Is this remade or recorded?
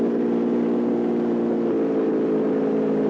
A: recorded